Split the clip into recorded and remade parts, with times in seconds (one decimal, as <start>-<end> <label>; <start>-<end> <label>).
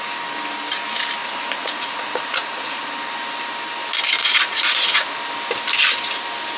0.0-1.2 recorded; 1.2-2.9 remade; 2.9-4.2 recorded; 4.2-5.2 remade; 5.2-6.6 recorded